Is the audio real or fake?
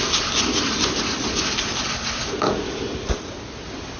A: real